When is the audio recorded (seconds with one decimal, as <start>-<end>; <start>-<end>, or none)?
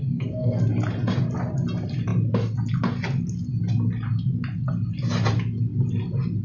0.6-6.4